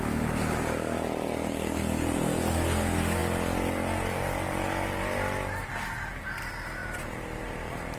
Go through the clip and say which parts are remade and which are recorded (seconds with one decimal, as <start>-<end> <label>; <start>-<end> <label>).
0.0-6.8 recorded; 6.8-8.0 remade